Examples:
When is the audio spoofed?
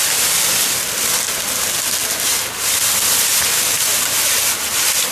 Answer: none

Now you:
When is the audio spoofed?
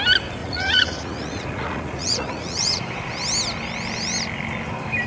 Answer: 0.4-2.8 (vocoder, Vocos)